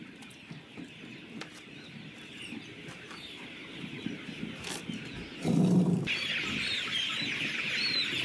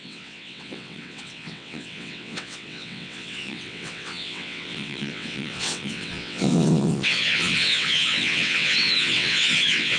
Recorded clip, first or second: first